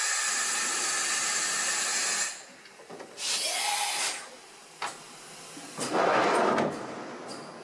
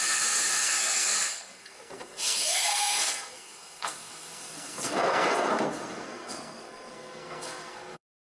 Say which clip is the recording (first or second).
first